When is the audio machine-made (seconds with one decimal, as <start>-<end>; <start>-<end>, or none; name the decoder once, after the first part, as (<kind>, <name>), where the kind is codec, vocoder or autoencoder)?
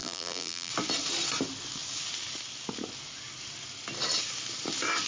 0.0-0.7 (vocoder, BigVGAN v2)